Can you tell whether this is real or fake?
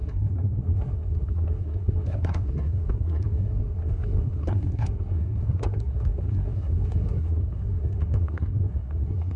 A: fake